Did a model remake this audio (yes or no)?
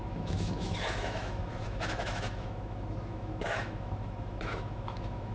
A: yes